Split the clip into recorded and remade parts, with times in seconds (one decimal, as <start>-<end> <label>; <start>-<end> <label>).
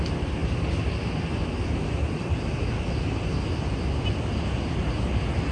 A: 0.0-5.5 recorded